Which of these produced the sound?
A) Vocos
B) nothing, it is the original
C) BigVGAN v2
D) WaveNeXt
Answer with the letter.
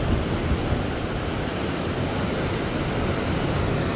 B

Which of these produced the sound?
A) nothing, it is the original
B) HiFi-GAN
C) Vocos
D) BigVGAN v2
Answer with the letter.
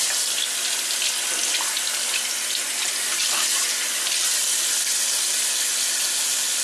A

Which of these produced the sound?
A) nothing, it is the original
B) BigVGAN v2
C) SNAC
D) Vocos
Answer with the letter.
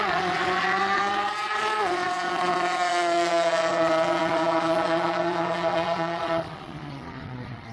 D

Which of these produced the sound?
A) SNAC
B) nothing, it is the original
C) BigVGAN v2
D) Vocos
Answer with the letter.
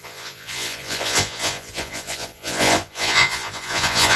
D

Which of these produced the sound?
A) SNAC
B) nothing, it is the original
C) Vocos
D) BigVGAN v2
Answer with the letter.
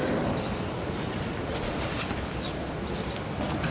B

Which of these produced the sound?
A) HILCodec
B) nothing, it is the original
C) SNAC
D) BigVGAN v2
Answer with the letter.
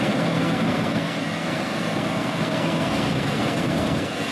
C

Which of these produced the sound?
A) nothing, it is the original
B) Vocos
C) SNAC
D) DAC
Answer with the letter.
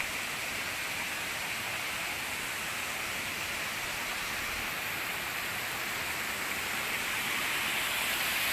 A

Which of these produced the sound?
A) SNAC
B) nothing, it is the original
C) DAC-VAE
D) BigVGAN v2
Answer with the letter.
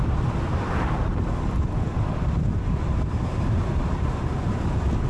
B